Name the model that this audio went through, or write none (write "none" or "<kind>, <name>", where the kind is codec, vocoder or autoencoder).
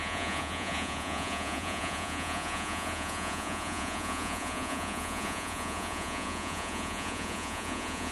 vocoder, Vocos